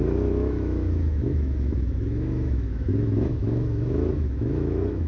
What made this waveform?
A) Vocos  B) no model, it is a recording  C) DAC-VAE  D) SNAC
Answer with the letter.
C